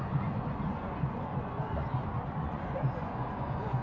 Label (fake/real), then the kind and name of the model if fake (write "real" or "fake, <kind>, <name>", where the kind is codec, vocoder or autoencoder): fake, vocoder, Vocos